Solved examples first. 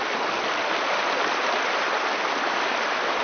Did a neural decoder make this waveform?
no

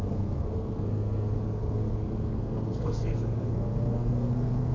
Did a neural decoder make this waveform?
yes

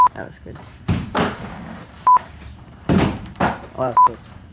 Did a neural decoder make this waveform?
yes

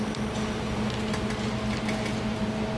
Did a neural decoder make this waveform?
no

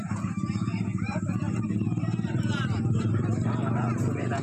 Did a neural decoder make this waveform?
yes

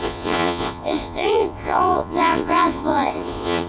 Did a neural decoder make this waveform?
yes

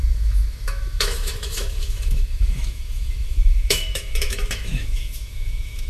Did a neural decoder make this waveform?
yes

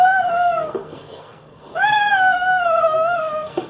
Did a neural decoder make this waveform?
yes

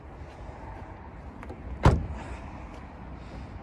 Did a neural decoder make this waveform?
no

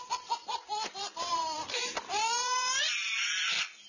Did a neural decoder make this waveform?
yes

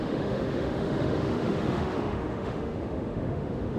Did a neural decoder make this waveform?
yes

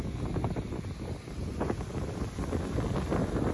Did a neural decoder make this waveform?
no